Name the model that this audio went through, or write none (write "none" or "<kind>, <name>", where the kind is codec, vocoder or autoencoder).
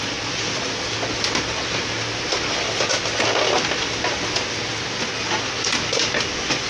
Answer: none